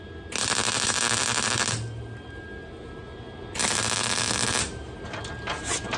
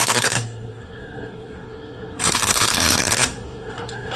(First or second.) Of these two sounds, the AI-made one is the second